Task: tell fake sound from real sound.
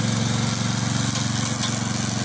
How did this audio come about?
real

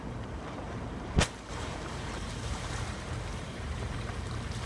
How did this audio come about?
fake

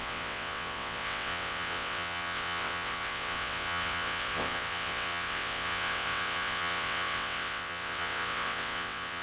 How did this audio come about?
fake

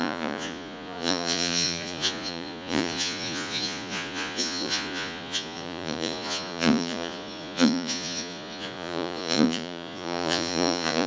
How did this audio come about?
fake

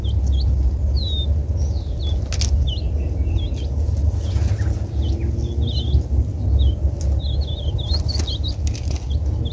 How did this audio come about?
real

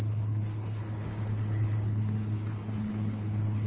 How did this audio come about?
fake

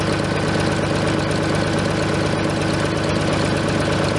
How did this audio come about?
real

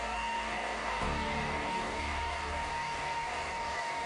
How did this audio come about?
fake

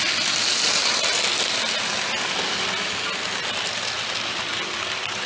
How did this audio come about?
real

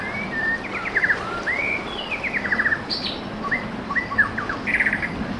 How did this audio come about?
real